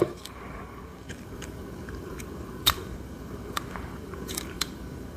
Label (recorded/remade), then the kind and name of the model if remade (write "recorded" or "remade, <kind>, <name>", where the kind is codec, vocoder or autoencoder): remade, codec, DAC